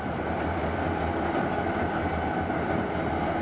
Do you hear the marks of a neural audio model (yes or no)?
no